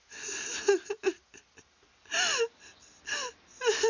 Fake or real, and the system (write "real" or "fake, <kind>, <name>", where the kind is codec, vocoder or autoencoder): real